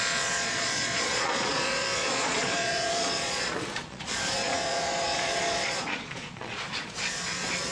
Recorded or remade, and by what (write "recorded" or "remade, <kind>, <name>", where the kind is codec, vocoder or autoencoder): remade, vocoder, Vocos